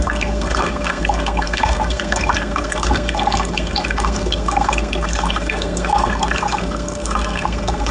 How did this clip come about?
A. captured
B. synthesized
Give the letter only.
B